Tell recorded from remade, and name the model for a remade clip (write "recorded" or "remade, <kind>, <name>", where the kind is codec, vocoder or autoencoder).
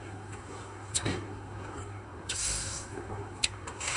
remade, codec, SNAC